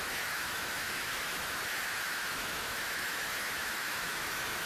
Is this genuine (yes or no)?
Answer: no